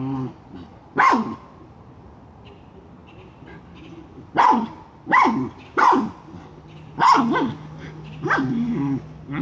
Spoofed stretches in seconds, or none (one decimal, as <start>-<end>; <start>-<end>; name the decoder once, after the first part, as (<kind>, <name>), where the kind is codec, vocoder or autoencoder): none